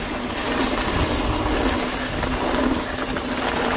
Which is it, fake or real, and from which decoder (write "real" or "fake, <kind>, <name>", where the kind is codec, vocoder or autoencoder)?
real